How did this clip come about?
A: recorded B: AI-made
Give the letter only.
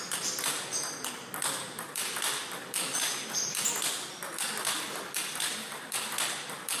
A